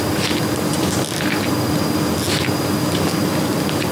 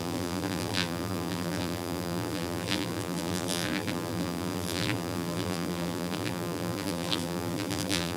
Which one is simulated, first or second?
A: second